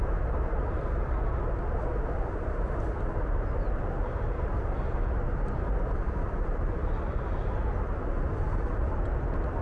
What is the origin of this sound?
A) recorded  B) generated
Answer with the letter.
A